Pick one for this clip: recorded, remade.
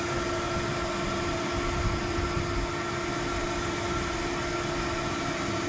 recorded